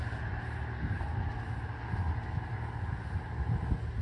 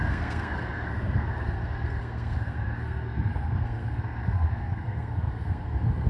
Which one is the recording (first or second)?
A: first